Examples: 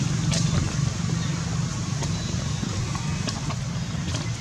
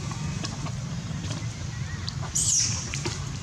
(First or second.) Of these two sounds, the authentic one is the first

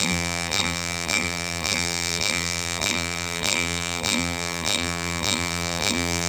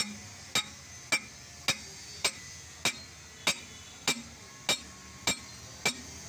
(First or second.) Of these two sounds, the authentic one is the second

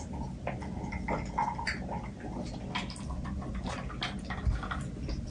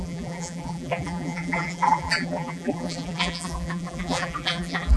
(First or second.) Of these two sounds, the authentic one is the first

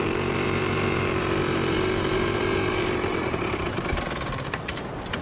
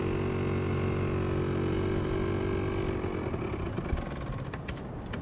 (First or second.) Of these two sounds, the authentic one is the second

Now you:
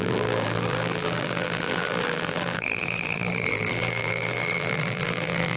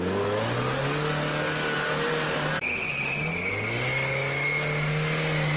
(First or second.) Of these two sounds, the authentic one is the second